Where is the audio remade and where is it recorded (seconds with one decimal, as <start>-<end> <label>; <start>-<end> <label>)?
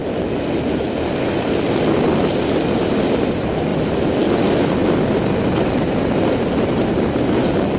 0.0-2.5 recorded; 2.5-4.8 remade; 4.8-6.9 recorded; 6.9-7.8 remade